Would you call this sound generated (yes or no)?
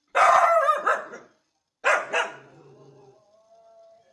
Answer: no